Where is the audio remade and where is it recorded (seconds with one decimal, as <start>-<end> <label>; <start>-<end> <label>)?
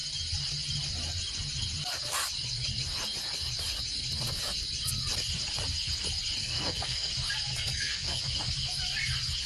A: 0.0-6.4 recorded; 6.4-7.1 remade; 7.1-7.5 recorded; 7.5-8.2 remade; 8.2-9.5 recorded